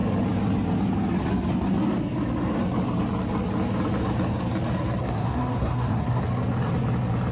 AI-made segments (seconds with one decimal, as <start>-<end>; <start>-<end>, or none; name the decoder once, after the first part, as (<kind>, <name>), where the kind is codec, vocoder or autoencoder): 5.0-6.2 (codec, SNAC)